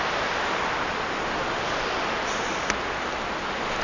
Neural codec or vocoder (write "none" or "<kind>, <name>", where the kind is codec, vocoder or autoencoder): none